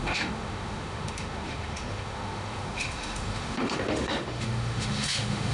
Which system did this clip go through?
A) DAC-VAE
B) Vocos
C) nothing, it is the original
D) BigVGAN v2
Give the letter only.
A